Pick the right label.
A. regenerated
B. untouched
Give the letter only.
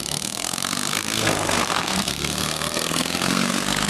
A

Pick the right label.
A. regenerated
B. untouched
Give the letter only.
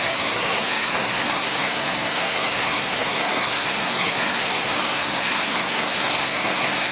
A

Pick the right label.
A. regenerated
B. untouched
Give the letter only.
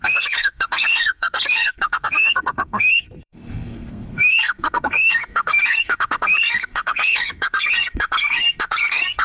A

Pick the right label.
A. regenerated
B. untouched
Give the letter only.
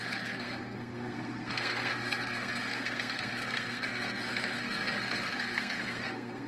A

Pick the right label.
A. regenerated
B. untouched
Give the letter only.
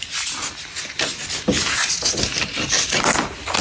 B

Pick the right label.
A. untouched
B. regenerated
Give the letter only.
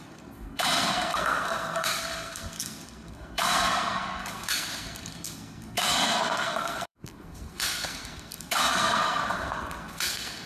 B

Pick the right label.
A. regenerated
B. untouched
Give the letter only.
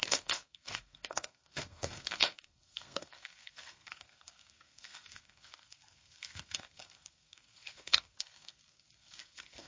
A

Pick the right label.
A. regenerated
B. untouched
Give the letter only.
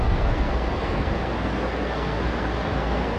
A